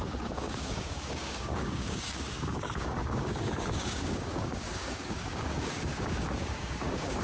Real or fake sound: fake